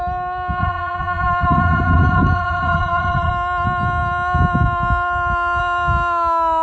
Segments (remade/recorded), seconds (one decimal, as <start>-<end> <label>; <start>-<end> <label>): 0.0-0.6 recorded; 0.6-3.3 remade; 3.3-6.6 recorded